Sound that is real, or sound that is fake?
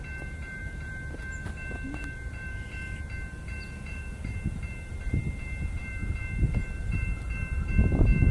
fake